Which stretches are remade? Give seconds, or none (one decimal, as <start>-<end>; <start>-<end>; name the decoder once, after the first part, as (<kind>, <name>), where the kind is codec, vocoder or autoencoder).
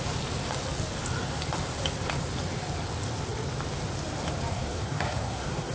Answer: 4.5-5.7 (codec, SNAC)